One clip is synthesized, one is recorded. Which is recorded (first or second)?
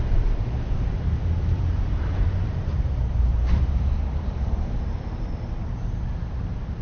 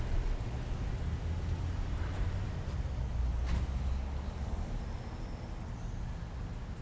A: second